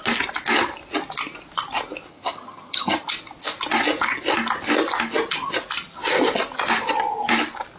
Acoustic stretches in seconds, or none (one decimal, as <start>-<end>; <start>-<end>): 0.0-2.1; 3.1-7.8